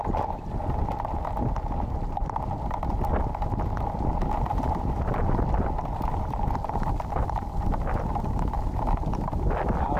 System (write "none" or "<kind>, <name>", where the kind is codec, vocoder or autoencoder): none